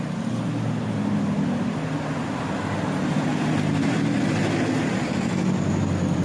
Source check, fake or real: real